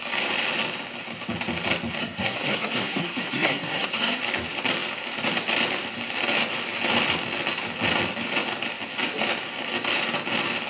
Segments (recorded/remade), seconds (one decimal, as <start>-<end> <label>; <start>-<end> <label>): 0.0-2.0 recorded; 2.0-4.2 remade; 4.2-10.7 recorded